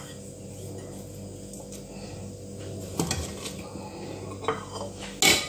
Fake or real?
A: real